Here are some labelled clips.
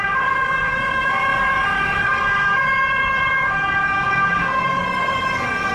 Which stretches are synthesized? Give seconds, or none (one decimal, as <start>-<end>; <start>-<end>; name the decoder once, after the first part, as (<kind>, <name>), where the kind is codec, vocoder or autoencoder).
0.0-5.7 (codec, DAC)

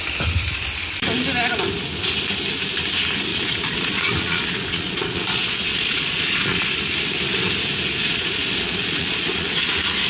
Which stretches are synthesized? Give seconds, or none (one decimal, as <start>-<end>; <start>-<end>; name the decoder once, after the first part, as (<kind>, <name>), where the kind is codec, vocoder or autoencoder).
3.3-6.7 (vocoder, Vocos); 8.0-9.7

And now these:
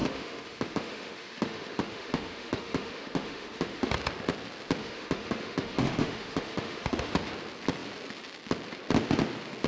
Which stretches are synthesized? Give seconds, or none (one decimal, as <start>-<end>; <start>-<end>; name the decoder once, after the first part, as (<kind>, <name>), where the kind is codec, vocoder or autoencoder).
0.0-3.9 (autoencoder, DAC-VAE); 4.8-7.1

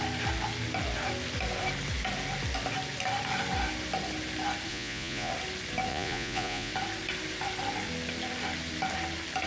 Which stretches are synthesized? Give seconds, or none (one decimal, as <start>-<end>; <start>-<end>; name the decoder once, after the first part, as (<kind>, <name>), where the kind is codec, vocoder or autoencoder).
4.7-5.3 (vocoder, Vocos); 5.9-6.7

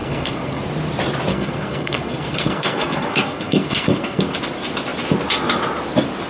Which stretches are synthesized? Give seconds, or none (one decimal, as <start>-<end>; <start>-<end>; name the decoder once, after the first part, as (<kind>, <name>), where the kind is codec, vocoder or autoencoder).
0.0-0.6 (codec, SNAC); 1.3-4.4